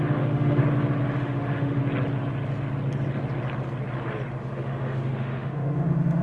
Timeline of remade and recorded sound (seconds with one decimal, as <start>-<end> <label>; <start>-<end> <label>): 0.0-0.6 remade; 0.6-1.2 recorded; 1.2-1.8 remade; 1.8-4.4 recorded; 4.4-6.2 remade